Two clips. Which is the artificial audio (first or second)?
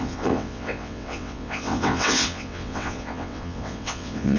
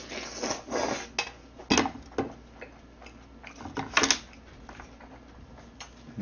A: first